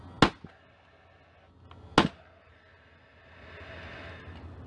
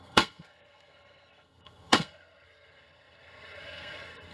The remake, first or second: second